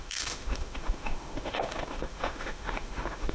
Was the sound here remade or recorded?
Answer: remade